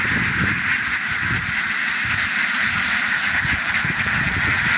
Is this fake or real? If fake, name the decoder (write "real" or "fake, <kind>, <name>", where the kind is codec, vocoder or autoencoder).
real